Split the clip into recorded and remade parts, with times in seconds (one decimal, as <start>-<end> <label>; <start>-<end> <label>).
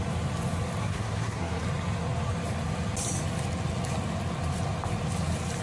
0.0-0.8 recorded; 0.8-1.6 remade; 1.6-5.6 recorded